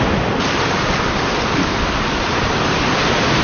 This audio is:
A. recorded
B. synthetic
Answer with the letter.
A